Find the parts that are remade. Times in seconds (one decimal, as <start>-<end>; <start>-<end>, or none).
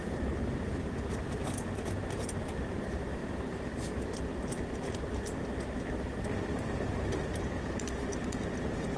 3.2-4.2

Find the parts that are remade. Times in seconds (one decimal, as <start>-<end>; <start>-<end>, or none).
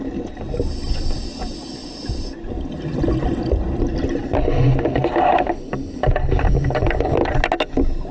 1.8-2.5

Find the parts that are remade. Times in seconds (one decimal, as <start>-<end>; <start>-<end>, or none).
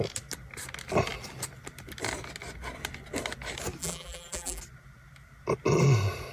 3.8-4.6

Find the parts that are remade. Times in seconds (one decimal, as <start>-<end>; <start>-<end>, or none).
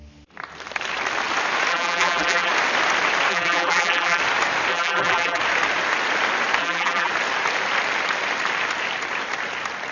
1.7-2.5; 3.3-4.2; 4.7-5.4; 6.6-7.1